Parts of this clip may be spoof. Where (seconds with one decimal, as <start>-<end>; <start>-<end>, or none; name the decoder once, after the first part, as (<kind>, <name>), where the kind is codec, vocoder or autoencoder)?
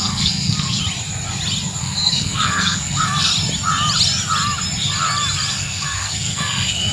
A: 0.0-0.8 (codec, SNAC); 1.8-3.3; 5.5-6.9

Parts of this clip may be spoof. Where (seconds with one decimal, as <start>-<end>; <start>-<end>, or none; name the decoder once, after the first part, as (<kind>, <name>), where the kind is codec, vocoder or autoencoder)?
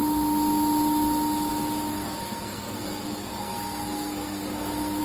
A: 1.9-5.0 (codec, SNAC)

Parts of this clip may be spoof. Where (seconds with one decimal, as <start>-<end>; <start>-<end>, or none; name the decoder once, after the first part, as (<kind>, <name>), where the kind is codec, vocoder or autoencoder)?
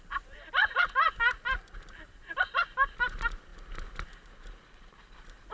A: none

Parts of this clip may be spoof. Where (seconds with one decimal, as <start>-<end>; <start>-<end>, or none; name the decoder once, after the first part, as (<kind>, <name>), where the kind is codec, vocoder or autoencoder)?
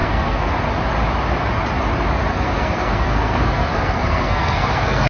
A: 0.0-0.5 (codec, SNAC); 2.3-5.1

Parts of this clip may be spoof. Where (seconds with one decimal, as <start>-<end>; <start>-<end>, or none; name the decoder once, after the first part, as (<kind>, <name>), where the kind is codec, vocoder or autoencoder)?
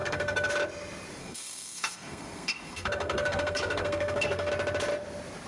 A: 0.0-0.5 (codec, SNAC); 1.2-4.5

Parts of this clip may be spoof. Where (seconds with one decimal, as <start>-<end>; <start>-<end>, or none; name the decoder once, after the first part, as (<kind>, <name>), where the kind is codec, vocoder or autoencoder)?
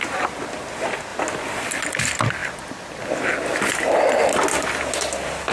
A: none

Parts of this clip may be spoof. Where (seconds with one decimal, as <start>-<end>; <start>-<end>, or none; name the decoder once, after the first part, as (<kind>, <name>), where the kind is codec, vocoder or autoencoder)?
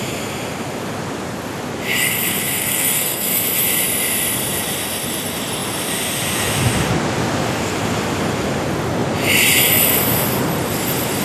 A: 2.3-3.3 (codec, SNAC)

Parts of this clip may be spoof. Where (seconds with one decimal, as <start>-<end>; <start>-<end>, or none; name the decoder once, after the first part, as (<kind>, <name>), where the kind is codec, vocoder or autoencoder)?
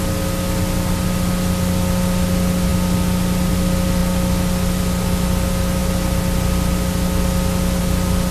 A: none